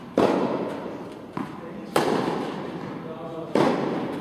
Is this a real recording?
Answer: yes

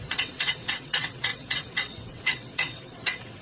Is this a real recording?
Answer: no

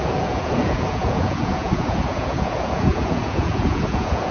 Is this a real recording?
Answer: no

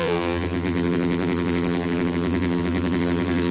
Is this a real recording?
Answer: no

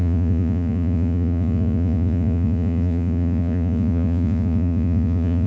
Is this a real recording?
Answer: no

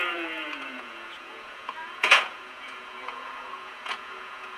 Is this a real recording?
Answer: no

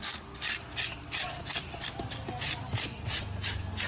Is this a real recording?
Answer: yes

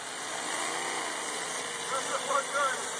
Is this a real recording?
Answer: yes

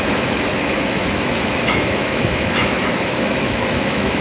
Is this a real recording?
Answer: no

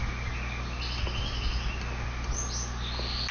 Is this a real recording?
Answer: yes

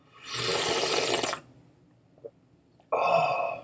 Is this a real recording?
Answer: yes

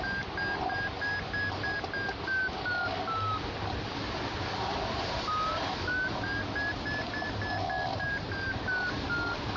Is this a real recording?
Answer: yes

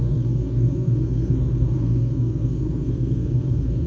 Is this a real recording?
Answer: no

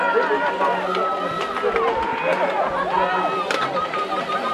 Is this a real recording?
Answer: yes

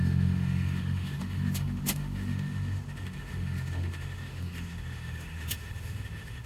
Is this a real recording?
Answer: no